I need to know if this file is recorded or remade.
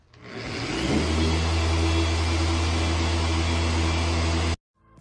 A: recorded